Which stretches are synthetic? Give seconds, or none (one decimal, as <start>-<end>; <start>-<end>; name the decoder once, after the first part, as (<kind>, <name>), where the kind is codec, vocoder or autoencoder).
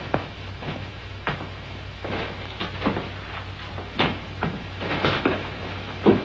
0.0-2.6 (autoencoder, DAC-VAE); 3.8-6.2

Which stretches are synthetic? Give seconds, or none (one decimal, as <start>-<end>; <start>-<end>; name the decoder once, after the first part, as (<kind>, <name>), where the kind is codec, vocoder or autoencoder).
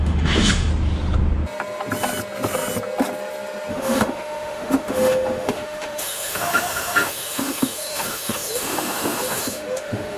0.0-0.7 (autoencoder, DAC-VAE); 3.7-10.2